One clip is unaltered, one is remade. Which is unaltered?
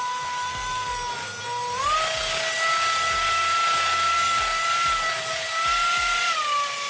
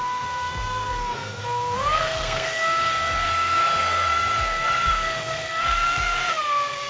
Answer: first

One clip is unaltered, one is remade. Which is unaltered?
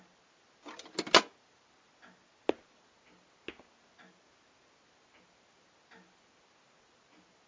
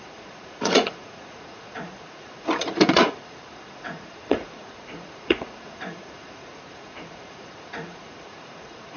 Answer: first